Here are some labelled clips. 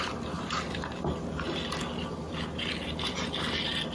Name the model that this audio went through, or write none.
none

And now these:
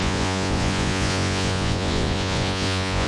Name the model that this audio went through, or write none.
vocoder, Vocos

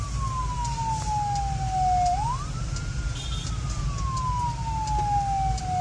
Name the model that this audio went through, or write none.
none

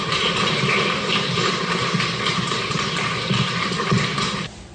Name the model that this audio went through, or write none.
vocoder, BigVGAN v2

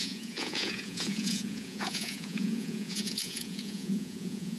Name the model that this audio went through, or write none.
vocoder, Vocos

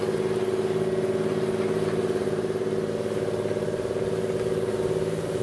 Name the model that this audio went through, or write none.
none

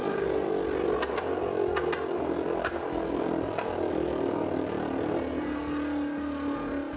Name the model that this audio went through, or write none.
none